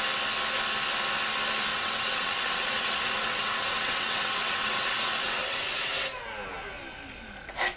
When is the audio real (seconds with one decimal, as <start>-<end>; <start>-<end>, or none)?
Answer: 0.0-1.7; 5.8-7.8